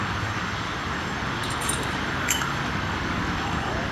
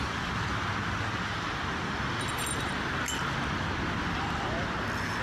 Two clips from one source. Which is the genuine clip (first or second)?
second